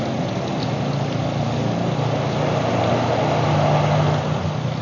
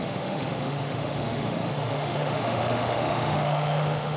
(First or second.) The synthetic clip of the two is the second